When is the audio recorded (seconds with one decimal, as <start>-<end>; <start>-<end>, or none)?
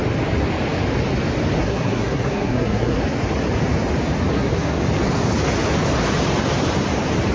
0.0-1.6; 3.0-4.3; 4.8-7.3